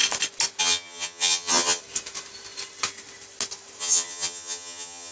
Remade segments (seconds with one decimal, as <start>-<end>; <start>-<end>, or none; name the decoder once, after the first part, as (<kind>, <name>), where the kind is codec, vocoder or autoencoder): 0.6-1.8 (vocoder, HiFi-GAN); 3.8-5.1